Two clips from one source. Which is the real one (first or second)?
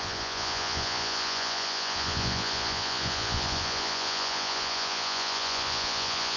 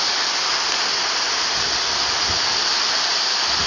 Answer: second